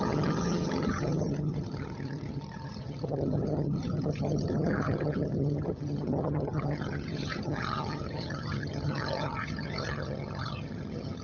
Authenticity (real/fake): fake